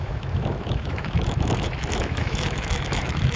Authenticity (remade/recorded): remade